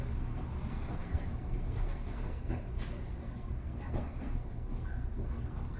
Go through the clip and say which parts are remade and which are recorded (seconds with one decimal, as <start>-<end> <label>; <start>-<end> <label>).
0.0-5.8 remade